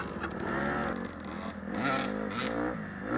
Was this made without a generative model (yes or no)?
yes